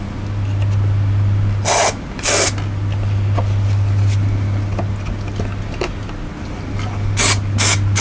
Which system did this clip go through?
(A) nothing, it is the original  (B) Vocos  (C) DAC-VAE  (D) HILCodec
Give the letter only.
A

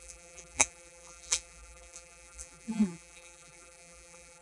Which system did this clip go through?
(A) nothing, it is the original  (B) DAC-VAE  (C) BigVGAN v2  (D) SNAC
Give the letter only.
C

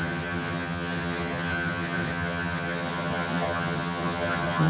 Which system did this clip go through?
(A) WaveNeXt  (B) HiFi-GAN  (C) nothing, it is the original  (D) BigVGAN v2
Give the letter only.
B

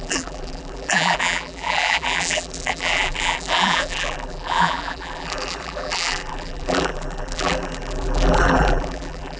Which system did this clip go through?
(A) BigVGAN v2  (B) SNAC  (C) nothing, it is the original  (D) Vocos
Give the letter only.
A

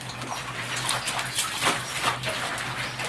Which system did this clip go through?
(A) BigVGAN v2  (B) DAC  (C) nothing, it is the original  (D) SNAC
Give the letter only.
C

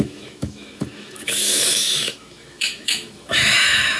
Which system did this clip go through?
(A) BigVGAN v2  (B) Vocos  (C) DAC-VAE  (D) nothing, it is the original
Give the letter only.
C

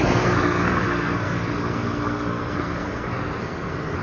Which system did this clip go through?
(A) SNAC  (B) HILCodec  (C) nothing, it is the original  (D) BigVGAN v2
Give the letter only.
A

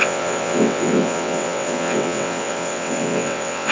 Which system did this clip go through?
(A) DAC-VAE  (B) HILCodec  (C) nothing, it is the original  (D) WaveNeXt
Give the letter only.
D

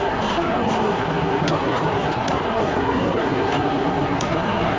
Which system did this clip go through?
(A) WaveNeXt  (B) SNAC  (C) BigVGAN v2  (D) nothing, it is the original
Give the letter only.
B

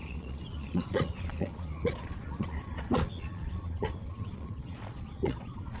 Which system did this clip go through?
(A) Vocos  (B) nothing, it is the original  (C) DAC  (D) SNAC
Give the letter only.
A